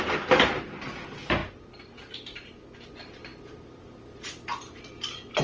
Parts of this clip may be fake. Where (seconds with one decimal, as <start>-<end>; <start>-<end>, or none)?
none